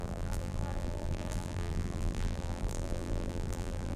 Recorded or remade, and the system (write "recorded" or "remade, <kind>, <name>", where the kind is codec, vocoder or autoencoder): remade, vocoder, BigVGAN v2